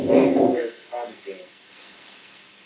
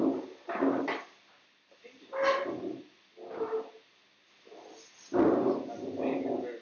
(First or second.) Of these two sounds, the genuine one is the second